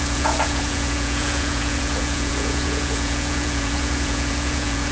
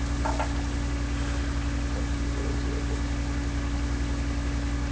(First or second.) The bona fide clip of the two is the second